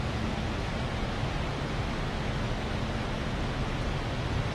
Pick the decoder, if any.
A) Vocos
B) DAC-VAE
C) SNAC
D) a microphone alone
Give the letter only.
D